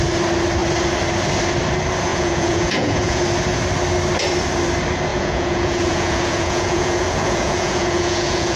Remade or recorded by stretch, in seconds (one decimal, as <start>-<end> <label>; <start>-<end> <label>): 0.0-2.1 recorded; 2.1-3.2 remade; 3.2-5.1 recorded; 5.1-8.6 remade